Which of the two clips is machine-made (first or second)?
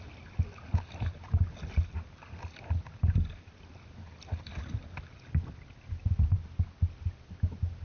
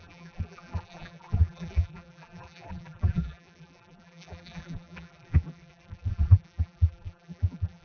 second